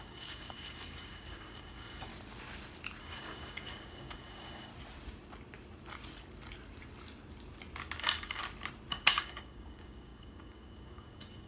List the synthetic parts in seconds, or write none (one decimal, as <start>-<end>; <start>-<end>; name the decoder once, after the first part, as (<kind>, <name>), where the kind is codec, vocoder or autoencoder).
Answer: 0.0-2.1 (codec, DAC); 3.0-4.7; 8.0-8.4; 8.9-11.5